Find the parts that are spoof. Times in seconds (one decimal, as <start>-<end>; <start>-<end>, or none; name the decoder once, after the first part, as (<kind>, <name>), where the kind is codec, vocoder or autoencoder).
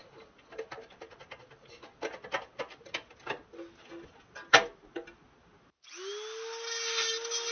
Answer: none